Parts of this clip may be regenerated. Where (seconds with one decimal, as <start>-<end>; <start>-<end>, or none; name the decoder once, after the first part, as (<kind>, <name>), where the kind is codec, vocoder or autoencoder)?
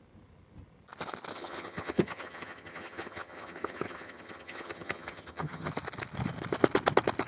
1.3-5.7 (vocoder, HiFi-GAN)